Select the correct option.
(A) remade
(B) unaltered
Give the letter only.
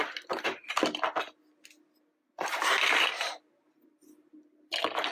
B